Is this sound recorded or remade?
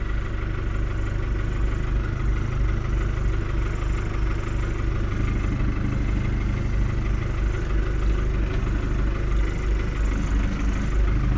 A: recorded